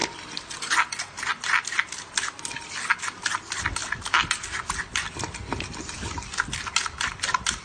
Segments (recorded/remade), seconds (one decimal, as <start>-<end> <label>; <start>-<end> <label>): 0.0-7.6 recorded